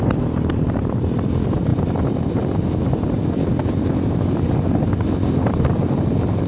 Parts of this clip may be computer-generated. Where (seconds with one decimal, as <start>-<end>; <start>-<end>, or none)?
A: 0.0-6.5